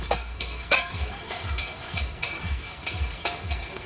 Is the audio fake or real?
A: fake